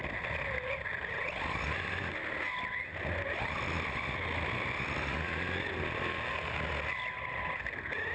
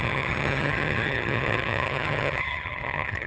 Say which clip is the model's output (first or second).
second